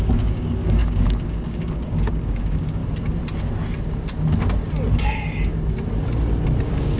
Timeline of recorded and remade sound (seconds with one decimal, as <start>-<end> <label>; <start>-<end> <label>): 0.0-2.8 remade; 2.8-6.6 recorded; 6.6-7.0 remade